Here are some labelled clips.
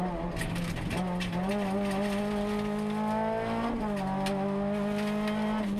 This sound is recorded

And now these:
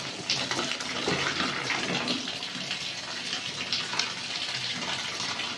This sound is recorded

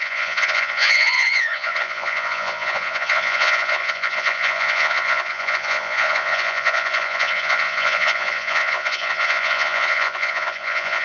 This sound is remade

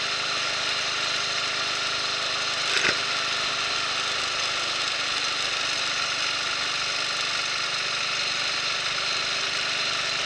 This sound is recorded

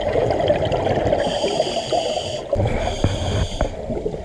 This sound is recorded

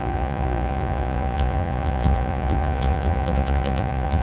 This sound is remade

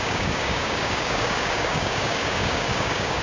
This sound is remade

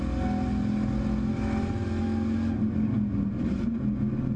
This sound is recorded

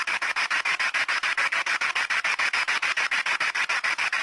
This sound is recorded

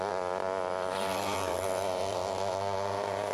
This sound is recorded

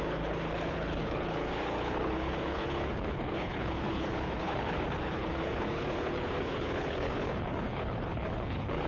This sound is remade